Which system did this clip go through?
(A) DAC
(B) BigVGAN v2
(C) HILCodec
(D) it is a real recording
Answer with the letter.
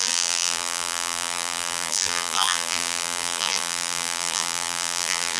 B